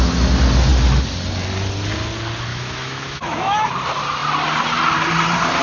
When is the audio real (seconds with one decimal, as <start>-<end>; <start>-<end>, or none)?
0.0-2.5; 3.7-5.6